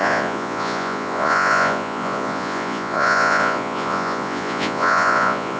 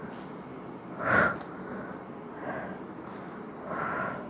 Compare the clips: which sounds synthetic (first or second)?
first